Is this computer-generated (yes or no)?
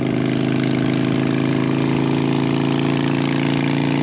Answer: no